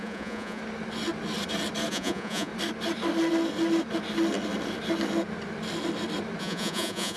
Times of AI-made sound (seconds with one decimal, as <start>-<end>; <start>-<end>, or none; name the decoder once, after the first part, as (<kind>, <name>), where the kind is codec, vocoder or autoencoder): 0.0-0.6 (vocoder, Vocos); 1.9-2.5; 6.4-7.2